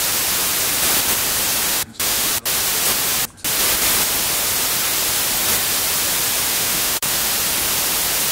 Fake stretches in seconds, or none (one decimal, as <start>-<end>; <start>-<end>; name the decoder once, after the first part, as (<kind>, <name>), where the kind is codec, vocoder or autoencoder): 1.7-2.3 (autoencoder, DAC-VAE); 6.5-7.3